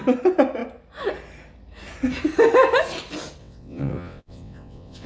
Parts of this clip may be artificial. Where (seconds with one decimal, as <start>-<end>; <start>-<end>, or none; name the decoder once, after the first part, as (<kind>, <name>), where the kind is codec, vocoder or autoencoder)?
3.4-5.1 (vocoder, WaveNeXt)